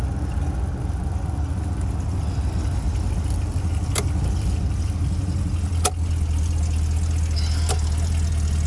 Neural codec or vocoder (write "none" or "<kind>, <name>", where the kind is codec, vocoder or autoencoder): none